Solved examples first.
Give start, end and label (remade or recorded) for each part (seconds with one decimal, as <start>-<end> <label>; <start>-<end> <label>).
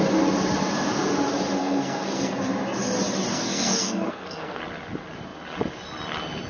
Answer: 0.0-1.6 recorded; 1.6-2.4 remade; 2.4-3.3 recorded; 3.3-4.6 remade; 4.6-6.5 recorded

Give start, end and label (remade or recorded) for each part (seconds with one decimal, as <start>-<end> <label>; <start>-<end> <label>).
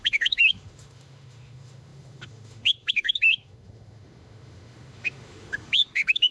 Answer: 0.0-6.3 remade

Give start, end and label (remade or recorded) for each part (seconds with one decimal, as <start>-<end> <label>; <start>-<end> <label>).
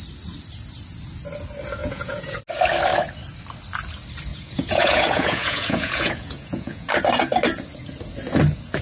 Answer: 0.0-1.8 recorded; 1.8-2.4 remade; 2.4-4.3 recorded; 4.3-6.9 remade; 6.9-8.8 recorded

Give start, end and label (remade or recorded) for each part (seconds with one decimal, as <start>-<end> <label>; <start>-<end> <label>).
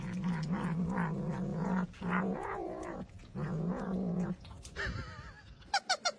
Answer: 0.0-1.5 recorded; 1.5-4.6 remade; 4.6-6.2 recorded